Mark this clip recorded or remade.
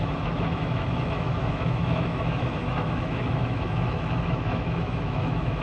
remade